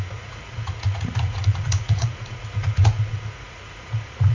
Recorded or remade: remade